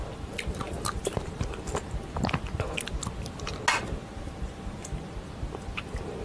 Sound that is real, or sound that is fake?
real